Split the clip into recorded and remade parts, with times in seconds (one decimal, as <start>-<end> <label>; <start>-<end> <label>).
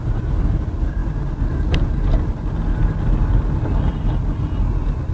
0.0-5.1 recorded